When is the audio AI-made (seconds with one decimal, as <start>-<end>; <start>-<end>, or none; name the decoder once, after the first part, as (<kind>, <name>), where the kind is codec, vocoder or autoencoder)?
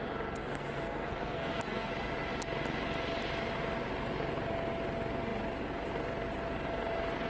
0.4-1.9 (codec, SNAC)